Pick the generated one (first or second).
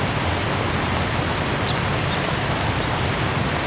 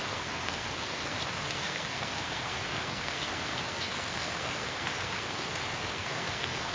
second